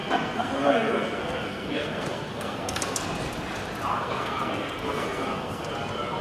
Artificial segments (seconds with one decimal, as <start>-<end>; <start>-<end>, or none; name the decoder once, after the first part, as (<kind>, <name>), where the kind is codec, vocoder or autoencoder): 0.0-3.0 (codec, SNAC); 3.9-5.7